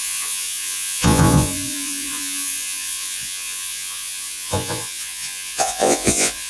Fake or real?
fake